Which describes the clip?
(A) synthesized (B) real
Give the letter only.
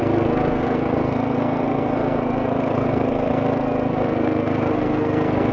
A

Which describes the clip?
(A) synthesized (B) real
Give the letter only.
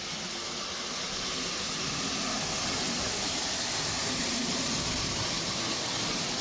B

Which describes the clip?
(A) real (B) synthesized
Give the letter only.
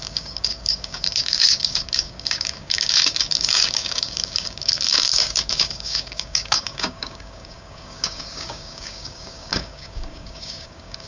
B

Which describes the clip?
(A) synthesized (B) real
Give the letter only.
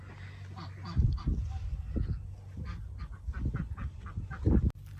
B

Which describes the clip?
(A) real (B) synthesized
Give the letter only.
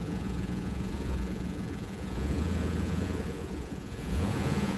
B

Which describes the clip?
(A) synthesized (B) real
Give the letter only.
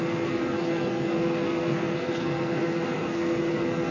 A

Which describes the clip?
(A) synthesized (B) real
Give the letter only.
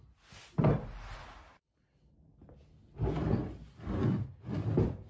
B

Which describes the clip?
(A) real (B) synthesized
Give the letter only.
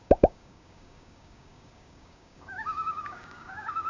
B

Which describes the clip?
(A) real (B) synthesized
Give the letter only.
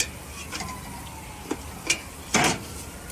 A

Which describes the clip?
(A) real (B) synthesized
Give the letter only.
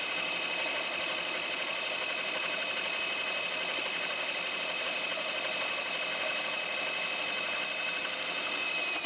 A